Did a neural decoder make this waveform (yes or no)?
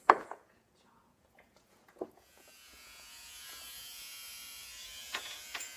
yes